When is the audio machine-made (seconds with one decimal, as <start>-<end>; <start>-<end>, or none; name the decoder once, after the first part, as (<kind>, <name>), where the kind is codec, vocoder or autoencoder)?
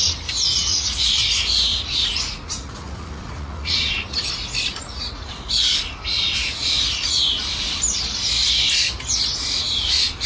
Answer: 0.7-1.2 (vocoder, Vocos); 1.7-4.3; 4.7-5.3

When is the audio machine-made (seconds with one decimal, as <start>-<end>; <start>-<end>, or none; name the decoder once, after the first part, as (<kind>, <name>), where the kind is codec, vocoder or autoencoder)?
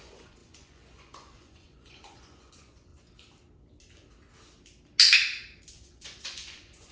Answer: 0.0-2.9 (vocoder, Vocos); 5.7-6.9